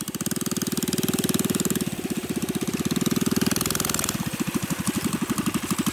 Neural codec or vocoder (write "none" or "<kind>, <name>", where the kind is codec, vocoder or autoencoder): vocoder, BigVGAN v2